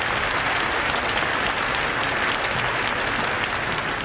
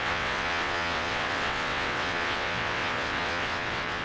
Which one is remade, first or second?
second